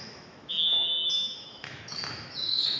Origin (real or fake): fake